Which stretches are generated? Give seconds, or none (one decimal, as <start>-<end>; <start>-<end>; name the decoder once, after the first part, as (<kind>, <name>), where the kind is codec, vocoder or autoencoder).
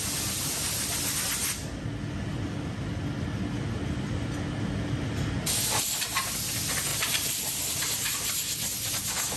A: 6.9-7.6 (vocoder, BigVGAN v2)